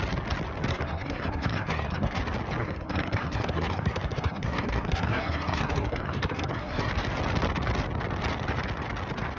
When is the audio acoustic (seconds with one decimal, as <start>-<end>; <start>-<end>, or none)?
0.0-0.7; 2.2-2.6; 6.9-9.4